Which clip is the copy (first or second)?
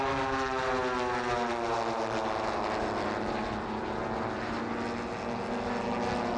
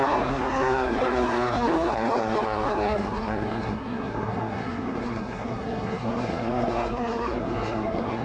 second